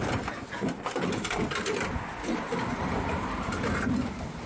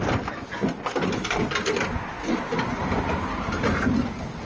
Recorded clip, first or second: second